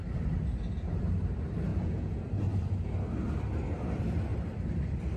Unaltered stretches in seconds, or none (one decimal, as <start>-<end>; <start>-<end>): 0.0-1.7; 2.2-5.2